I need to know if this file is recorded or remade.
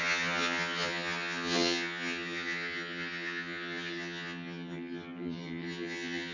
remade